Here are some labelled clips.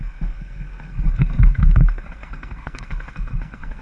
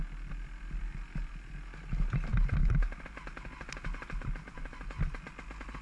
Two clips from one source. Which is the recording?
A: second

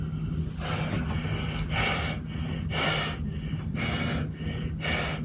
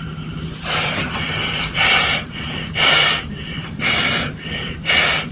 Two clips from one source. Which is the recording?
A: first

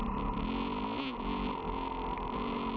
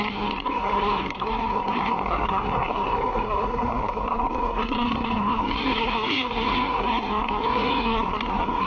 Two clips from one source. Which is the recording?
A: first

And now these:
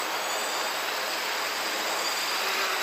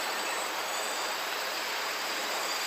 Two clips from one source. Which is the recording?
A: first